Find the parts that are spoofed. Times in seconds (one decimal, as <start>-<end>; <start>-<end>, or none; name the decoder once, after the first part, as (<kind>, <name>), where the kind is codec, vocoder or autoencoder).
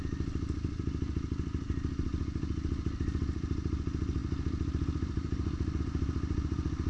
none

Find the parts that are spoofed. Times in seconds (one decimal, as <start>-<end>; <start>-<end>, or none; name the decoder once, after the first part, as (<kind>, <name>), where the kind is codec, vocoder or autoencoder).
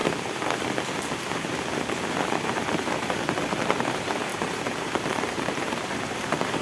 2.1-6.6 (vocoder, BigVGAN v2)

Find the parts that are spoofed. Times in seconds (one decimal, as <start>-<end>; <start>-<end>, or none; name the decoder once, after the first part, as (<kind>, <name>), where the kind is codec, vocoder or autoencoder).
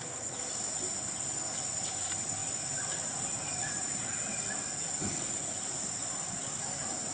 none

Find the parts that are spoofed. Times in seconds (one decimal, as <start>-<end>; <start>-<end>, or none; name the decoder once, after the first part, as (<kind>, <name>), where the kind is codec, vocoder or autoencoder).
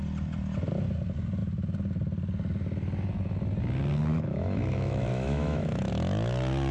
4.1-5.9 (autoencoder, DAC-VAE)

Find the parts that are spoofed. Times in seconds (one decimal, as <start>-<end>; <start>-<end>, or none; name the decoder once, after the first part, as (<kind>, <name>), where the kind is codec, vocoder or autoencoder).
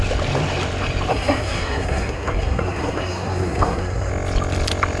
1.1-4.1 (codec, SNAC)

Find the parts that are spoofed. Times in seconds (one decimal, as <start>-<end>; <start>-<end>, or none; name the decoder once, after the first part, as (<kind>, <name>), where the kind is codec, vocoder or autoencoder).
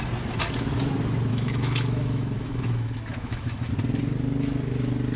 1.3-3.7 (autoencoder, DAC-VAE)